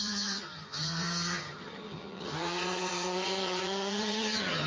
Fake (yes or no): yes